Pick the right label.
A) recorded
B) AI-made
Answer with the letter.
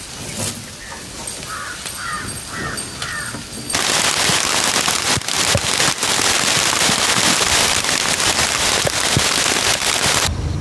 A